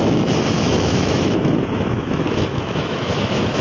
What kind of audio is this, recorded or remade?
remade